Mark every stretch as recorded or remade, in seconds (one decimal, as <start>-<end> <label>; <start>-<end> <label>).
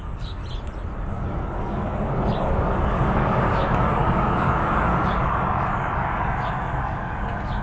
0.0-0.4 remade; 0.4-1.0 recorded; 1.0-7.6 remade